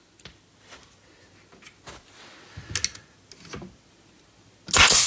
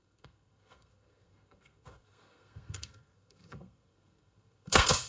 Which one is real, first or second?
first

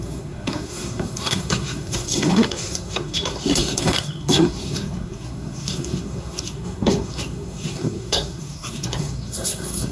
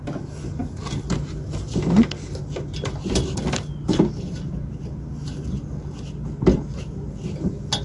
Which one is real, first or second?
second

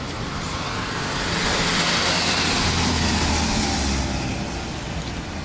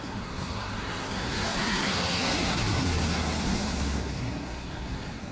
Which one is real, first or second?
first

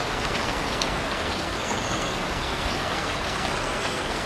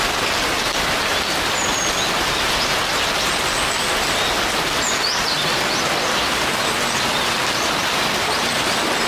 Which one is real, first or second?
second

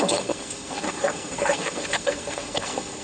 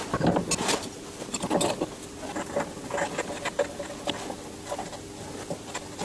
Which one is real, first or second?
second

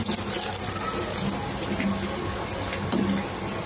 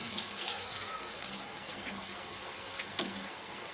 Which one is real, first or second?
first